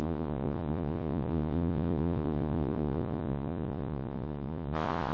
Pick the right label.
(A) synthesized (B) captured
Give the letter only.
A